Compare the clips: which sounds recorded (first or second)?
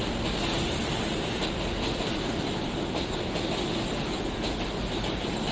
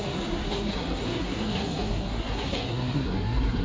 first